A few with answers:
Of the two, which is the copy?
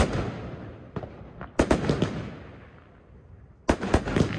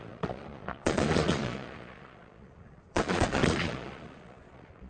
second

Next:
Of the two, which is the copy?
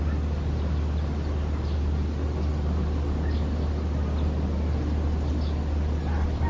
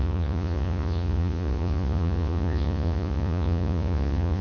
second